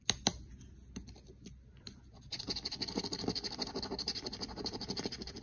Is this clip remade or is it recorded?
recorded